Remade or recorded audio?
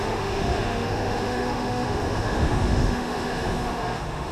remade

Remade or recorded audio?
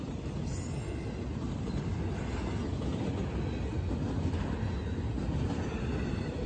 recorded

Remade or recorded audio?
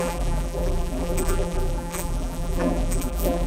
remade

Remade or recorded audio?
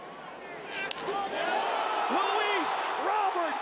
recorded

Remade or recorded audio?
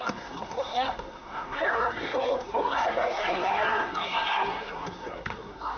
remade